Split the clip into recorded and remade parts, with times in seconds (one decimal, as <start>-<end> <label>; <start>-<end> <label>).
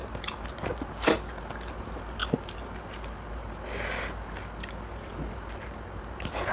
0.0-6.5 recorded